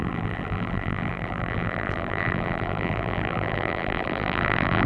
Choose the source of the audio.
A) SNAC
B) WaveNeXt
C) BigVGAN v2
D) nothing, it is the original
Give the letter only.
C